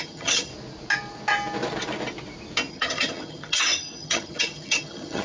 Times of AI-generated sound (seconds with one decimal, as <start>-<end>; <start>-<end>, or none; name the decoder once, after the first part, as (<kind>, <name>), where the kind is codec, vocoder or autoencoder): 0.0-0.5 (vocoder, HiFi-GAN); 2.7-5.2

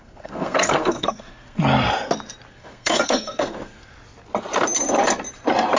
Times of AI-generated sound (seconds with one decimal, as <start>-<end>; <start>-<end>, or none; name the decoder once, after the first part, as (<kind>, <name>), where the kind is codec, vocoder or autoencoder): 0.0-1.6 (codec, SNAC); 2.5-3.9

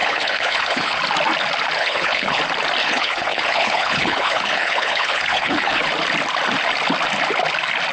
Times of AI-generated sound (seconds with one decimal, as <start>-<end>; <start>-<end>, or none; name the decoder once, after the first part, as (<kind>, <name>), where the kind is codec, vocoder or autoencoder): 0.0-1.0 (codec, HILCodec); 1.8-2.4; 2.8-5.8

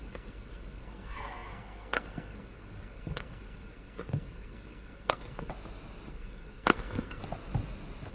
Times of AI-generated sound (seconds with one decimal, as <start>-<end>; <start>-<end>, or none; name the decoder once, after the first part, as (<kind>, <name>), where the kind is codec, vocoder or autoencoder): 0.0-5.5 (codec, SNAC); 6.1-7.2

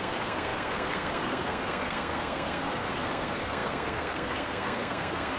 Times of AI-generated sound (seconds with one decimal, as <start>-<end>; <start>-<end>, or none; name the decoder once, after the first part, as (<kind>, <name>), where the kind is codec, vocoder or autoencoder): 0.0-5.4 (codec, SNAC)

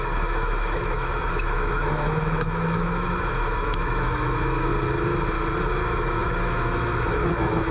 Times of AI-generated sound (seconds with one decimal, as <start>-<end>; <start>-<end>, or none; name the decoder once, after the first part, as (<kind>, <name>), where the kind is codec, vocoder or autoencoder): 0.0-4.7 (autoencoder, DAC-VAE); 5.6-7.7

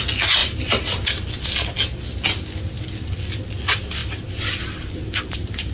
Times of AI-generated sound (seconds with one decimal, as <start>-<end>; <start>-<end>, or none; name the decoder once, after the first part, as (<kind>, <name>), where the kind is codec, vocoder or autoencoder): none